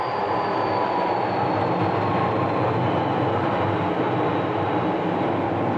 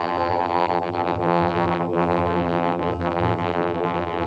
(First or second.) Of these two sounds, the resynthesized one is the second